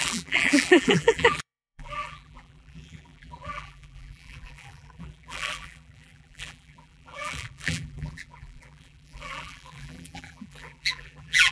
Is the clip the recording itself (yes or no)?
no